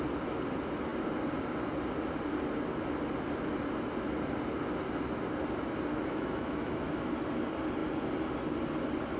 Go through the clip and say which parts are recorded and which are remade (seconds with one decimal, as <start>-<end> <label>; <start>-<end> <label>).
0.0-5.9 recorded; 5.9-6.9 remade; 6.9-9.2 recorded